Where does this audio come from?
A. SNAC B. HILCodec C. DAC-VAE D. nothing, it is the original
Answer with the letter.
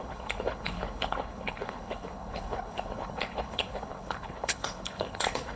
B